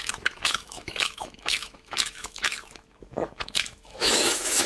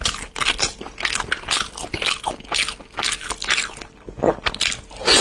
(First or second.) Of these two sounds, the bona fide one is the second